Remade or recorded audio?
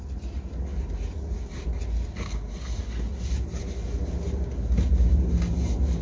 recorded